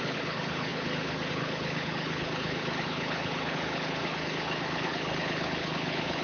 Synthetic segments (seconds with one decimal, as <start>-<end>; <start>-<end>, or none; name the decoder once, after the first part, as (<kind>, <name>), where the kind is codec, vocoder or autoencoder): 0.0-6.2 (codec, HILCodec)